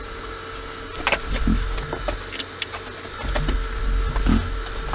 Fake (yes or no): no